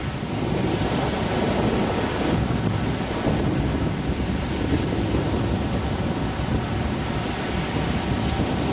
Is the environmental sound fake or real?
real